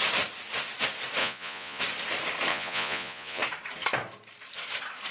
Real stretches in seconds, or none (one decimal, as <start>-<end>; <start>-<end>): 0.0-1.2; 1.8-2.5; 3.4-5.1

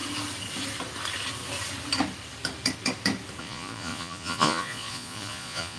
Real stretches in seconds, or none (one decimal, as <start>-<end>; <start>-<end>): 0.0-3.4

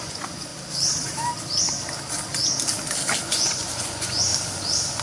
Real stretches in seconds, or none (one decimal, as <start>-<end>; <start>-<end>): 0.5-3.2; 4.3-5.0

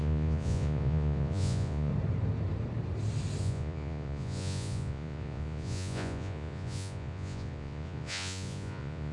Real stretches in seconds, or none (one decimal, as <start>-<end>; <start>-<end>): 1.9-3.4

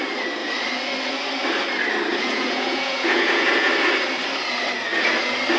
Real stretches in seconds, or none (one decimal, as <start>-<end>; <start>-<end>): 0.0-2.1; 3.7-5.6

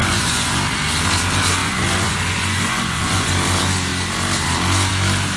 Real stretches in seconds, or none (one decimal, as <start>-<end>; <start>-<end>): 0.6-1.6; 3.3-5.4